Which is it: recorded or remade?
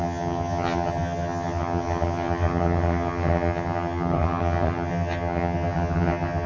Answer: remade